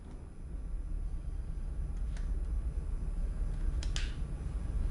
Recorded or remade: recorded